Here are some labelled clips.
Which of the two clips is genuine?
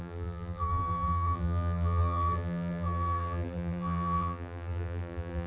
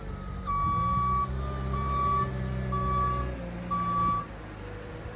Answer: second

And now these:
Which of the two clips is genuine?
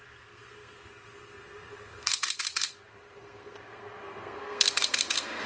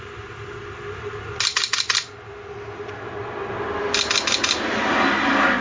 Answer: second